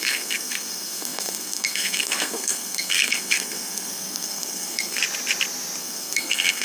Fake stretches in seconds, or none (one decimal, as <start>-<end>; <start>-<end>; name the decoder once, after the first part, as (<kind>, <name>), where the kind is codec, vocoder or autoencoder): 0.0-5.0 (codec, SNAC); 5.8-6.6